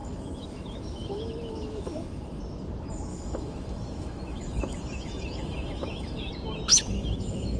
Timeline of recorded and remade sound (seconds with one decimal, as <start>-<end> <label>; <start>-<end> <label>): 0.0-2.4 remade; 2.4-3.1 recorded; 3.1-6.3 remade; 6.3-6.7 recorded; 6.7-7.6 remade